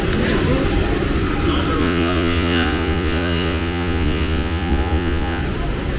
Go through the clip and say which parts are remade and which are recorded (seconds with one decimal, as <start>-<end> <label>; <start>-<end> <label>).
0.0-1.8 recorded; 1.8-5.4 remade; 5.4-6.0 recorded